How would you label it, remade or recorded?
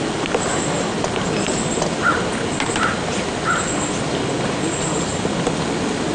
recorded